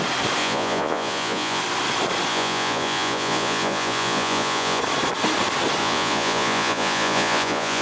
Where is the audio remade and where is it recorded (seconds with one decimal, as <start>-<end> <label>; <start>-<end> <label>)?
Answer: 0.0-0.4 recorded; 0.4-1.6 remade; 1.6-2.3 recorded; 2.3-4.8 remade; 4.8-5.8 recorded; 5.8-7.8 remade